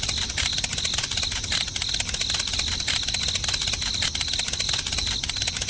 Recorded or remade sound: recorded